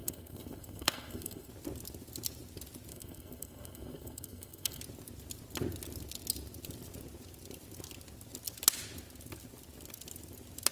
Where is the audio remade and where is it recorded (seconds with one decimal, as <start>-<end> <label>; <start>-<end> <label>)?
0.0-1.5 remade; 1.5-2.9 recorded; 2.9-4.8 remade; 4.8-10.7 recorded